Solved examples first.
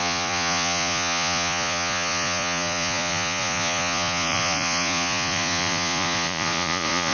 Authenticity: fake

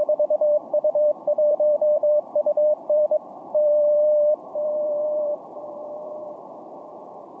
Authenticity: fake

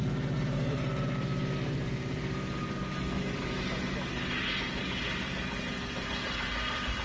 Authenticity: real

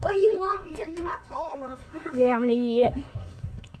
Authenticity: fake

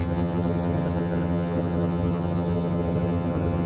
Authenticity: fake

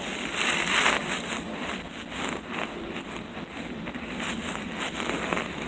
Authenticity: real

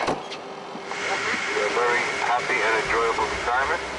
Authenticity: real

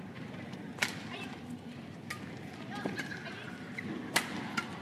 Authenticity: real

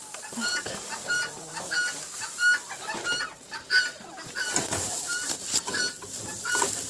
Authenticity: real